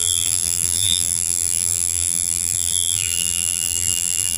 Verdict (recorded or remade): remade